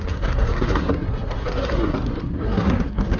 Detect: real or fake fake